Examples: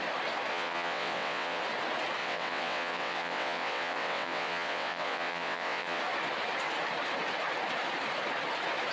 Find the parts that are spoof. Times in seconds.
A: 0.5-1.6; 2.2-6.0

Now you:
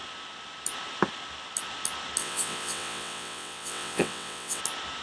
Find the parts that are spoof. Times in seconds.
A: 2.2-4.6

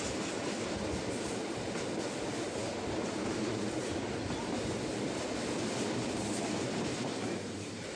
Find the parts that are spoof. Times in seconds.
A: none

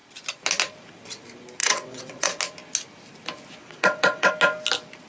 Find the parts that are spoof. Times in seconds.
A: 1.6-2.3; 3.6-4.3

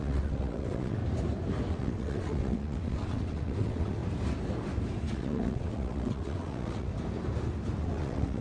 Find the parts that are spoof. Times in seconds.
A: 0.0-1.0; 1.7-4.0; 5.1-6.9; 7.8-8.4

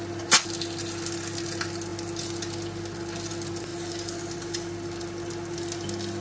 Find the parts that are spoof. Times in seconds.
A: none

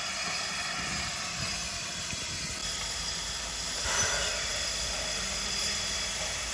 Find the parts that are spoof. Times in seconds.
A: none